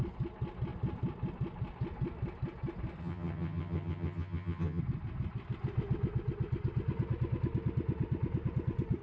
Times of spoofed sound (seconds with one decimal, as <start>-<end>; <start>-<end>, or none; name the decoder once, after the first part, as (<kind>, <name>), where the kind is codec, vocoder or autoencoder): 3.0-4.8 (vocoder, HiFi-GAN)